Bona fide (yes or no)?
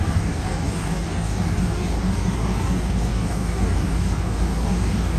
no